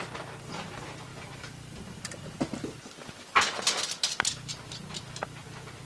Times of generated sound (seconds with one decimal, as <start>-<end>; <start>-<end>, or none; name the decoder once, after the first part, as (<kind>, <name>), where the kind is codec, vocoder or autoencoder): 1.1-2.2 (vocoder, BigVGAN v2)